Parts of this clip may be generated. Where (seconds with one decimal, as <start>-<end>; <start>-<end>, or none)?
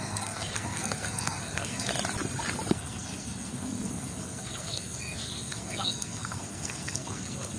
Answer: 0.0-1.9; 2.7-7.6